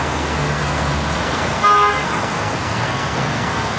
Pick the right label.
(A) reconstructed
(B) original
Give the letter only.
A